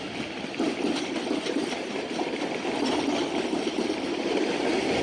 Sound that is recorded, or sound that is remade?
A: recorded